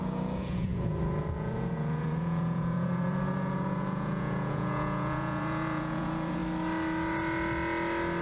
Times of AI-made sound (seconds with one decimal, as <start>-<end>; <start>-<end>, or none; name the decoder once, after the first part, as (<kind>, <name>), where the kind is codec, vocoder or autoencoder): 0.0-6.4 (vocoder, Vocos)